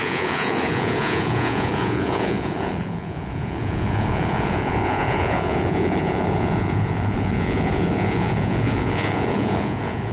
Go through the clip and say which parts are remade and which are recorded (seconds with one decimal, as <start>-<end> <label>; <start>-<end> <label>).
0.0-10.1 remade

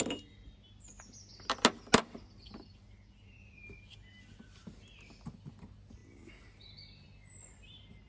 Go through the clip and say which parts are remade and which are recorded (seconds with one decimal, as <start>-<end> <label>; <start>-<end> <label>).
0.0-8.1 recorded

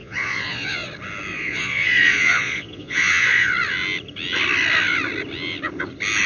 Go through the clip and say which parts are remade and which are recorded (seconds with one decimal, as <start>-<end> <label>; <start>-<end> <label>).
0.0-0.9 remade; 0.9-1.3 recorded; 1.3-3.5 remade; 3.5-6.3 recorded

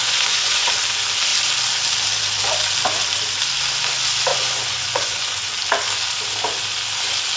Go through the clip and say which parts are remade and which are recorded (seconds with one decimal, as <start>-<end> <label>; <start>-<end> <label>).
0.0-0.7 remade; 0.7-4.3 recorded; 4.3-5.5 remade; 5.5-7.4 recorded